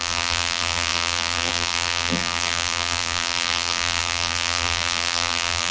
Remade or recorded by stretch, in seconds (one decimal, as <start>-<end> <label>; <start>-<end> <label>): 0.0-5.7 remade